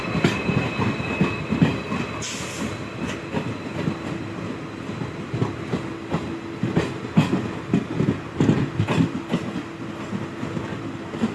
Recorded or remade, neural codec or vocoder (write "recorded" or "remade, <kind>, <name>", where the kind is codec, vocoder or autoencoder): recorded